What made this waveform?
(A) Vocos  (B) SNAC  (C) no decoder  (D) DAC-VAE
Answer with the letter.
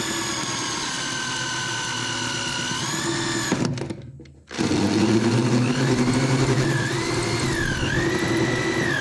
C